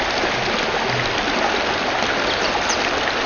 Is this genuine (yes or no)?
yes